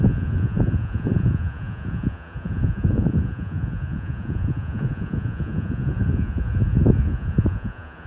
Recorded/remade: remade